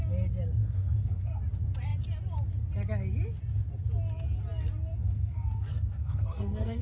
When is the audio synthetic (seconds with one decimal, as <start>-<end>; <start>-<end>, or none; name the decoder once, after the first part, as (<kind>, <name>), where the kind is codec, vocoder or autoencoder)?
0.6-1.4 (codec, SNAC); 4.9-6.8

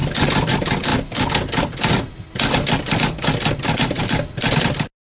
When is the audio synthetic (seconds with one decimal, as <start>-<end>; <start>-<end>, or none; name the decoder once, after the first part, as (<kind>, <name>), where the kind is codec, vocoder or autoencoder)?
none

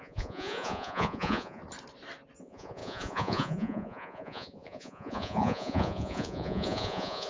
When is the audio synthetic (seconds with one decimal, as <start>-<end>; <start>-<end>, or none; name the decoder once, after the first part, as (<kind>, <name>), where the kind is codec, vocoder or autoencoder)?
0.0-1.6 (vocoder, Vocos); 2.4-7.3

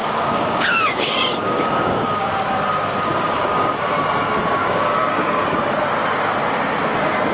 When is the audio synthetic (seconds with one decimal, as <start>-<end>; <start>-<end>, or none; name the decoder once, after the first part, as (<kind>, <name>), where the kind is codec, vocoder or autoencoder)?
0.0-2.3 (codec, DAC); 3.1-3.9; 4.5-5.7

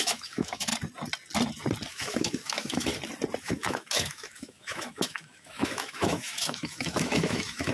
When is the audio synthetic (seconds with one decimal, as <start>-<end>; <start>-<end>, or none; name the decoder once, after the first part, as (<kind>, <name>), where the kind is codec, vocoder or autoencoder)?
0.0-0.7 (autoencoder, DAC-VAE); 1.9-2.9; 3.4-7.7

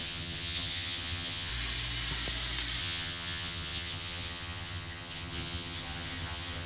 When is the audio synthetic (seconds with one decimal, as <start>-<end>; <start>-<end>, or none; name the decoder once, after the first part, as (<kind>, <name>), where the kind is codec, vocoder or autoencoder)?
0.0-1.5 (vocoder, HiFi-GAN); 2.8-6.7